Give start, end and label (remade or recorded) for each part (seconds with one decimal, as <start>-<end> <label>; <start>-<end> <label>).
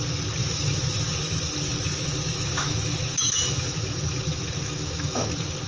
0.0-0.4 recorded; 0.4-1.1 remade; 1.1-1.9 recorded; 1.9-5.3 remade; 5.3-5.7 recorded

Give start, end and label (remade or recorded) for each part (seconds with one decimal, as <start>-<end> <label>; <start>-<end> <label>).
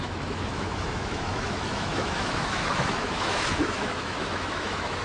0.0-5.0 remade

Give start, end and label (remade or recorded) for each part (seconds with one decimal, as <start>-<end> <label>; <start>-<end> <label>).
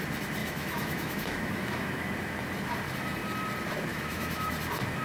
0.0-0.4 recorded; 0.4-2.1 remade; 2.1-3.9 recorded; 3.9-4.5 remade; 4.5-5.0 recorded